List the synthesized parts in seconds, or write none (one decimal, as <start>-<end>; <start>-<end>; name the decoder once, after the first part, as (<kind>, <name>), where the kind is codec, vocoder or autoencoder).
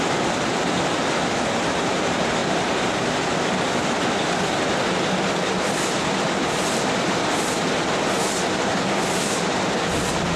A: none